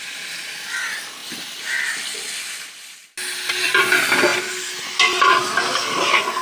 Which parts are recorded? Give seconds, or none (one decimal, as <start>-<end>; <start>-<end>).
0.0-6.4